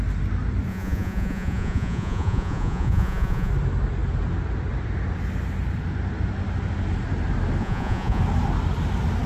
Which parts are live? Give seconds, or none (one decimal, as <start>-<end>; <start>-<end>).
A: 0.0-0.7; 3.5-7.6; 8.2-9.3